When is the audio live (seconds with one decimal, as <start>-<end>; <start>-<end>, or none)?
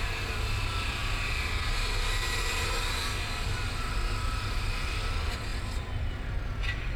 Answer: 0.0-7.0